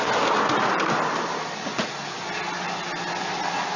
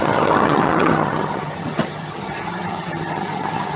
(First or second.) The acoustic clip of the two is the first